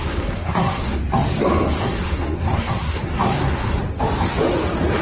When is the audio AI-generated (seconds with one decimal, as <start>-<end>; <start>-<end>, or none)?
0.0-1.0; 1.8-3.8